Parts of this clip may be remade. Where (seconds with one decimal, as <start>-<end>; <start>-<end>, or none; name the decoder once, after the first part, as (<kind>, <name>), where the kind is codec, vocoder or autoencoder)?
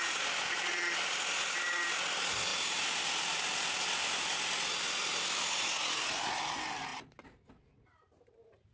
none